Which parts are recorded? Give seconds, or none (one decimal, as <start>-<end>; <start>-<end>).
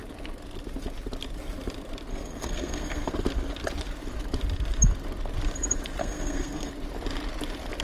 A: 0.0-2.1; 3.1-6.0; 6.7-7.8